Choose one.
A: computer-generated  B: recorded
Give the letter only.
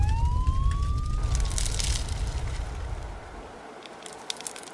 B